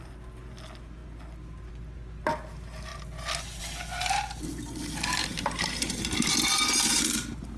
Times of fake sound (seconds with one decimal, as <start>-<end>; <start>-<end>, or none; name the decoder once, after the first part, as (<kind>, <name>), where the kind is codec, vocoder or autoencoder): 5.2-6.0 (vocoder, BigVGAN v2)